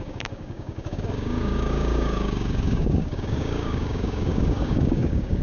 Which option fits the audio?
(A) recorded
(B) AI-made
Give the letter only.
B